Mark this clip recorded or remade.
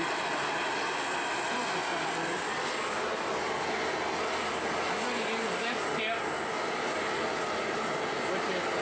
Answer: recorded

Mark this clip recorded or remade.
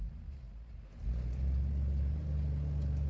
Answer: recorded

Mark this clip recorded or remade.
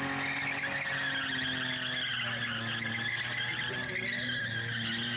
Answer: recorded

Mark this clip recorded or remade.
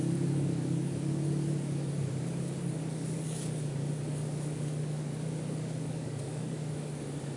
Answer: remade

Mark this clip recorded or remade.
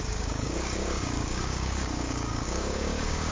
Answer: remade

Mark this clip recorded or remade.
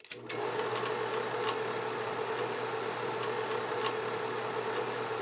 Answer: recorded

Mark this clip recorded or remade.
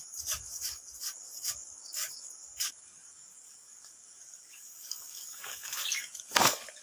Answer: remade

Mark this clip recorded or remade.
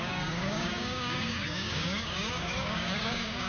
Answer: remade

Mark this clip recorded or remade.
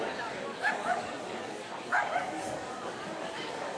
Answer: remade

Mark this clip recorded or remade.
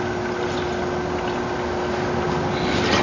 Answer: recorded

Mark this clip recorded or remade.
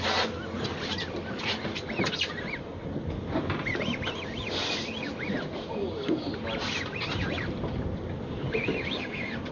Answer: recorded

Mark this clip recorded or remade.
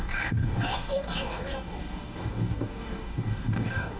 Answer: remade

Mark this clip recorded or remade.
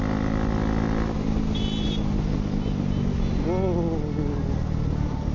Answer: recorded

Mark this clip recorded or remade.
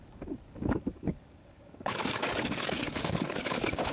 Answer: remade